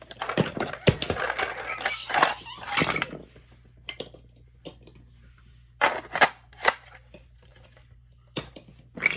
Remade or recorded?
recorded